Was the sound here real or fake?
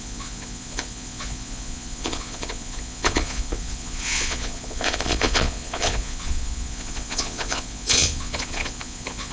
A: fake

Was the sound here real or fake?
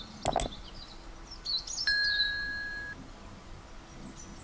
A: real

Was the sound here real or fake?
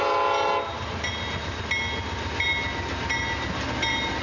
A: real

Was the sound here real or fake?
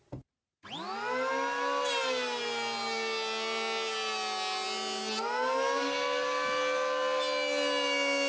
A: real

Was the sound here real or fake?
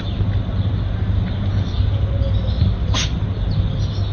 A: real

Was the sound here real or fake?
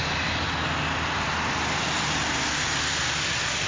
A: real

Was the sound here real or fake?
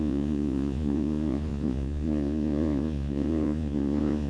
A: fake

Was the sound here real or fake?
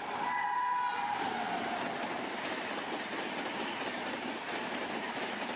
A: real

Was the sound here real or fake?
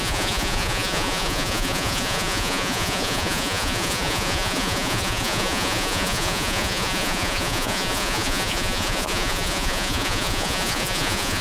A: fake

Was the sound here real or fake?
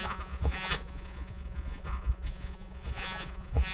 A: fake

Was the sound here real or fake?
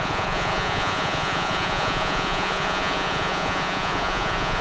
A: fake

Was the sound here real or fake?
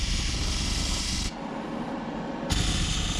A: real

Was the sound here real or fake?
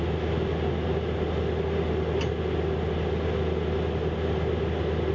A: real